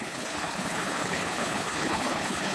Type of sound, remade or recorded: remade